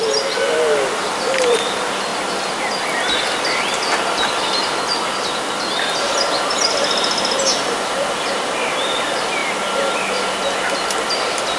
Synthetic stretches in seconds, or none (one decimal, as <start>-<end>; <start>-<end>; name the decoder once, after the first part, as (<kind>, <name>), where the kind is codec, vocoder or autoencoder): none